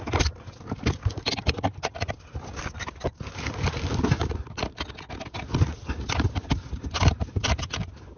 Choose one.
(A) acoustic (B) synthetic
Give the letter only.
A